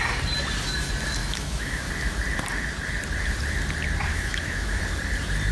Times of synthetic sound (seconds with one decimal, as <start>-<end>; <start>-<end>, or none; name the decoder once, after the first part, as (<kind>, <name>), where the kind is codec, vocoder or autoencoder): 1.2-1.9 (autoencoder, DAC-VAE); 4.1-4.8